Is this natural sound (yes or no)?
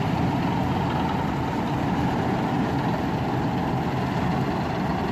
yes